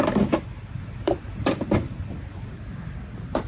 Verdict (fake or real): fake